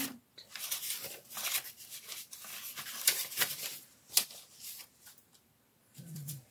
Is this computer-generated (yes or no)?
yes